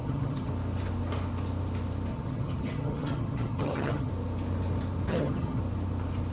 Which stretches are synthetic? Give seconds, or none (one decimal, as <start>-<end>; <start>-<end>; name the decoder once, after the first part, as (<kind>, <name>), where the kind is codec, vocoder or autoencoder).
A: 0.0-0.5 (vocoder, HiFi-GAN); 2.1-4.1; 5.1-5.6